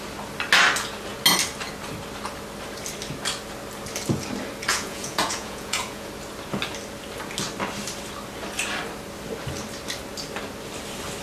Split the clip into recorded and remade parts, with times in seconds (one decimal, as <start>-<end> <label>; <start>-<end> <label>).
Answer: 0.0-4.7 recorded; 4.7-6.1 remade; 6.1-11.2 recorded